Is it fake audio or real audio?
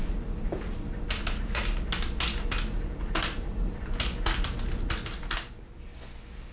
real